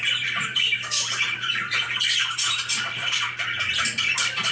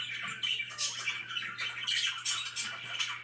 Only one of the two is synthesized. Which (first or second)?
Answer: first